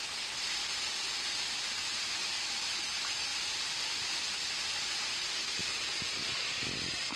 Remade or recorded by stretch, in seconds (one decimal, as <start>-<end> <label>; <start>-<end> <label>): 0.0-0.6 recorded; 0.6-1.2 remade; 1.2-3.3 recorded; 3.3-4.5 remade; 4.5-5.6 recorded; 5.6-6.5 remade; 6.5-7.2 recorded